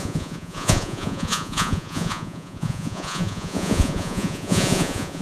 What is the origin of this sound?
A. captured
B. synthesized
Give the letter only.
B